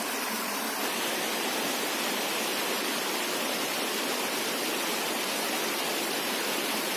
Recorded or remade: recorded